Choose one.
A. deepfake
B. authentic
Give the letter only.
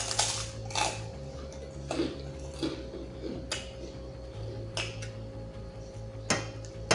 B